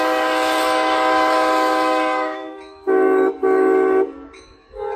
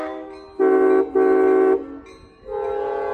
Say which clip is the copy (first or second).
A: first